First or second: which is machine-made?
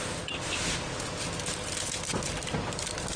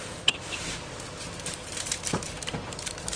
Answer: second